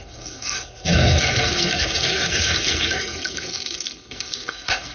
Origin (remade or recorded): remade